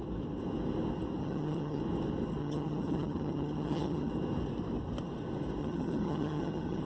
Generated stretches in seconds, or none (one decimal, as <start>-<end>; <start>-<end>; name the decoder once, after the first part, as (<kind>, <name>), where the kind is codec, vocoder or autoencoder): 1.2-1.8 (vocoder, HiFi-GAN); 2.4-4.1; 5.6-6.8